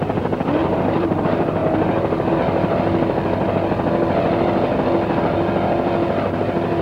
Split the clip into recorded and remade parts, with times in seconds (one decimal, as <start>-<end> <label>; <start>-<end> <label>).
0.0-0.6 recorded; 0.6-1.2 remade; 1.2-6.8 recorded